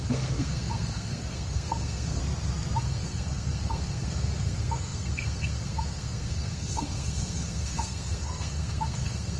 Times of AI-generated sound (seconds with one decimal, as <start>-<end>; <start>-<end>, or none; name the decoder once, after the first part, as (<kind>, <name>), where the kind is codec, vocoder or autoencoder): 0.0-2.2 (codec, SNAC); 2.8-9.4